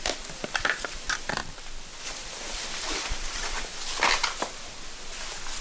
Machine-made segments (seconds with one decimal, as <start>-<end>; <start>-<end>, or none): 0.0-1.4; 2.0-3.7